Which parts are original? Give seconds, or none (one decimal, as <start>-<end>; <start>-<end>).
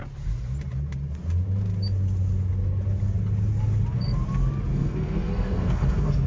0.0-4.7